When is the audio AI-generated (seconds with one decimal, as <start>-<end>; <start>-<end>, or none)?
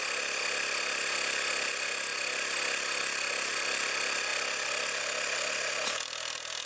none